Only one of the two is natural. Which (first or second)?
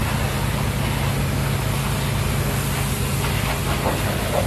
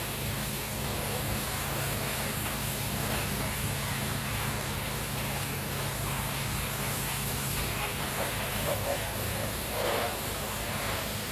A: first